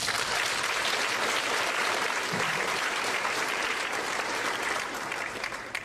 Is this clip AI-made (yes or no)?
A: yes